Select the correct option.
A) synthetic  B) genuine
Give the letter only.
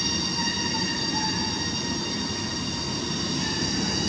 B